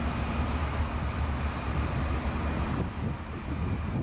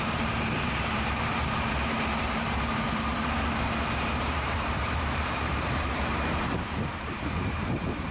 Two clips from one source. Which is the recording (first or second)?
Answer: first